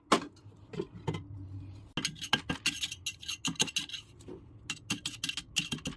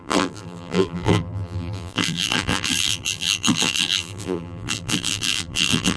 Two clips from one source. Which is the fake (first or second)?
second